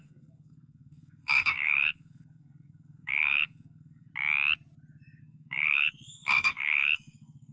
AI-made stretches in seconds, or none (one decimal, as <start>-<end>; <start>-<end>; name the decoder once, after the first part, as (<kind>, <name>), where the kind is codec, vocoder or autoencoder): 0.0-4.1 (codec, SNAC); 5.2-7.5

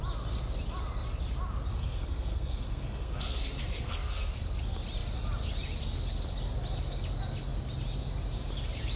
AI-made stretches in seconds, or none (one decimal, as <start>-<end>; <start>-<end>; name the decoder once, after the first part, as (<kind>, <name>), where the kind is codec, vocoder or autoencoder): 1.7-4.4 (codec, SNAC)